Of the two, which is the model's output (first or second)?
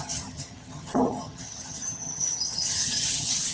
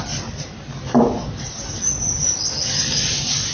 first